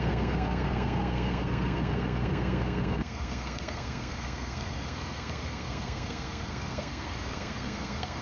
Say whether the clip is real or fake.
fake